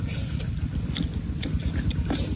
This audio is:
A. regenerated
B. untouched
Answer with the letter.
B